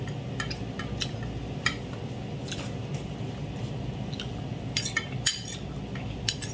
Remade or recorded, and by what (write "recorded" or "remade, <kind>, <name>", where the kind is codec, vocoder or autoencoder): recorded